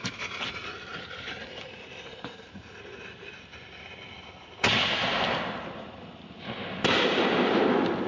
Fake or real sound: real